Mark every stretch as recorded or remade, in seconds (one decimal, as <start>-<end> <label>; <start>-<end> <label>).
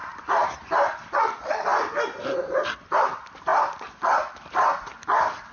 0.0-0.6 remade; 0.6-5.5 recorded